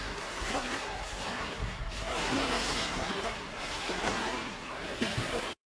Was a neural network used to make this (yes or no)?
yes